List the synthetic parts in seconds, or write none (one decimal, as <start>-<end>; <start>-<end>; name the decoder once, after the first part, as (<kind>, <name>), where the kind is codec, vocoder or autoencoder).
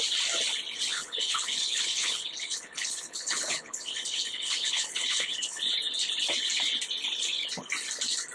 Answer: 0.9-5.6 (codec, HILCodec)